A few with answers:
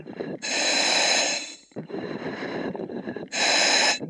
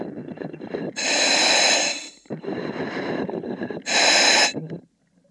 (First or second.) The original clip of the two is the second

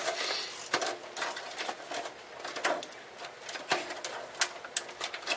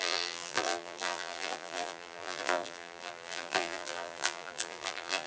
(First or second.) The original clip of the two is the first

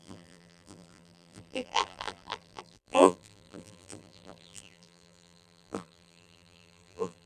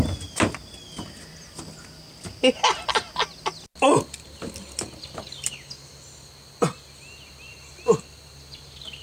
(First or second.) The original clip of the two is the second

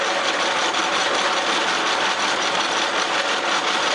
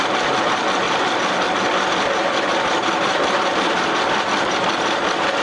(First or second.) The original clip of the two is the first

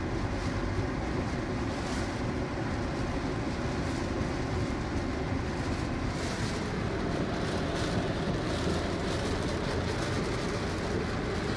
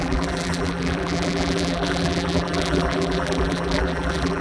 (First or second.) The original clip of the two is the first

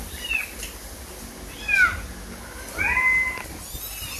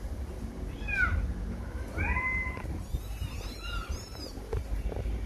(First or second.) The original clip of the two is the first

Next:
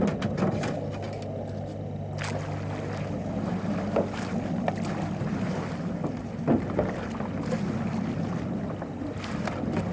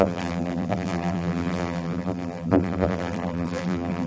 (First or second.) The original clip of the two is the first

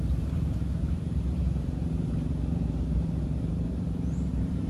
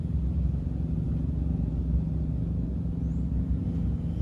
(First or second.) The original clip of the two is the second